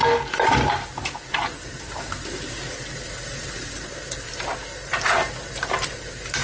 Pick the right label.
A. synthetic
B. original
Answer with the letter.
B